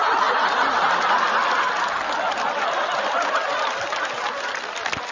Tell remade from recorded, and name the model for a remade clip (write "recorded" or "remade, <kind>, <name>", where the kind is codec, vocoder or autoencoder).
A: recorded